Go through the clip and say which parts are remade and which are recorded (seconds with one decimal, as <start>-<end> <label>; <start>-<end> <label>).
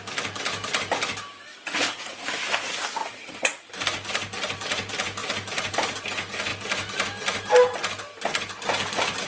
0.0-3.0 recorded; 3.0-3.7 remade; 3.7-9.3 recorded